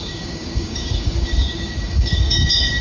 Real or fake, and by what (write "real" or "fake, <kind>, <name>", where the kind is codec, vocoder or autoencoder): fake, codec, DAC